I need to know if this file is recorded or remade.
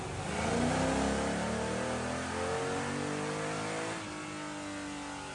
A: recorded